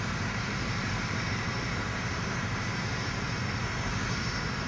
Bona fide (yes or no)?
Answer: no